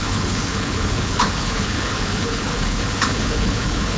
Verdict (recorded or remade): remade